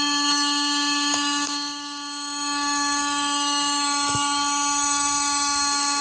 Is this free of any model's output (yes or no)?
no